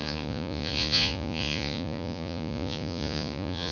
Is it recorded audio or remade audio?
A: remade